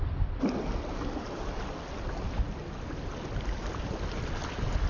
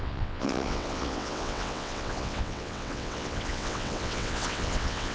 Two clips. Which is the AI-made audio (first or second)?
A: second